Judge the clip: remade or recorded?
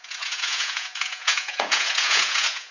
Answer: remade